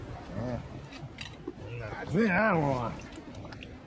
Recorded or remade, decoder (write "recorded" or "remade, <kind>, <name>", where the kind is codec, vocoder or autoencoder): recorded